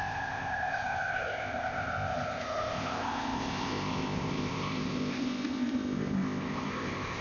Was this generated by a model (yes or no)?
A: yes